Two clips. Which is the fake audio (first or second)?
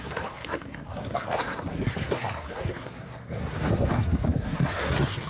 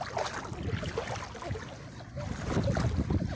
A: first